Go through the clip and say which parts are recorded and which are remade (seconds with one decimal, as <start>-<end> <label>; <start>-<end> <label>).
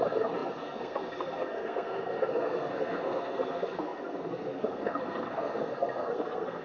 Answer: 0.0-6.6 remade